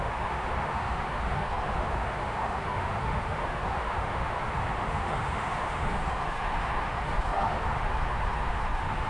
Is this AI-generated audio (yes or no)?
yes